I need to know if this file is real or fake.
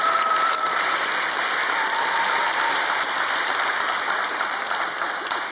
real